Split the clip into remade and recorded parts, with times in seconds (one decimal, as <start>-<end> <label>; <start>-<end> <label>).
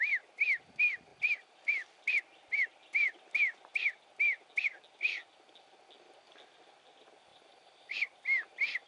0.0-7.3 recorded; 7.3-8.2 remade; 8.2-8.9 recorded